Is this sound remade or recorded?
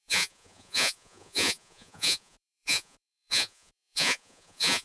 remade